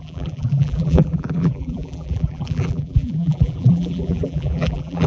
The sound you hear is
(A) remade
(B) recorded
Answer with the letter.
A